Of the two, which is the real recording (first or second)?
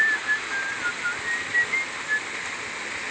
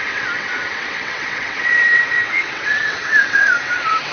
first